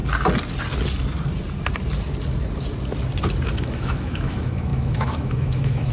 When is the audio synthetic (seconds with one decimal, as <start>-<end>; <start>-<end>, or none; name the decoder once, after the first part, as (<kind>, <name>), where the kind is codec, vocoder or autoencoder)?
3.5-5.9 (autoencoder, DAC-VAE)